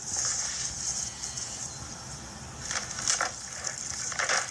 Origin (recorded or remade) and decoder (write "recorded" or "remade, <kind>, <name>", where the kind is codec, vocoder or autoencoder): recorded